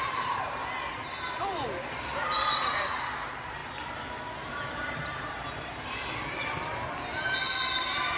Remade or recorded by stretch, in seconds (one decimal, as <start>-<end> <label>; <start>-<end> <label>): 0.0-0.6 remade; 0.6-1.4 recorded; 1.4-3.6 remade; 3.6-4.5 recorded; 4.5-8.2 remade